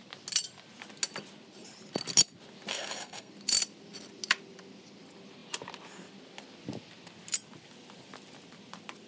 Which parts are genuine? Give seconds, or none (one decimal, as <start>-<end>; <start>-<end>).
0.0-2.7; 3.3-9.1

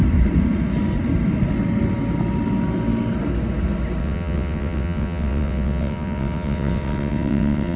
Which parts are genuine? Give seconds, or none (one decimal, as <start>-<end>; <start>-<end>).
0.0-4.0